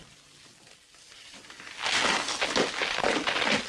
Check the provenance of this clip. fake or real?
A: real